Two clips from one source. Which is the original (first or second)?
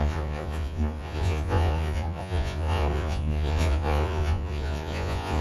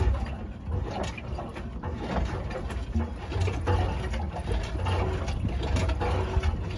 second